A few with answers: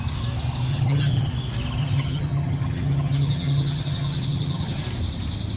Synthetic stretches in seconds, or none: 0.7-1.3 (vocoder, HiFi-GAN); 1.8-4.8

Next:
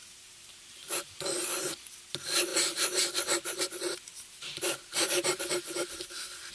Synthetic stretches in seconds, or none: 0.0-1.2 (vocoder, BigVGAN v2); 2.5-6.5

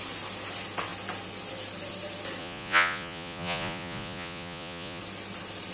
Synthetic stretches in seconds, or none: 2.4-5.0 (vocoder, Vocos)

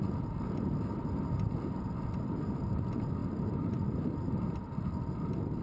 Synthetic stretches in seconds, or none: none

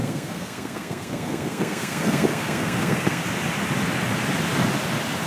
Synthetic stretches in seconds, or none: 0.0-3.2 (codec, SNAC)

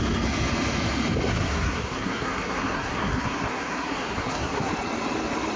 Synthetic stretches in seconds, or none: 1.3-4.7 (codec, SNAC)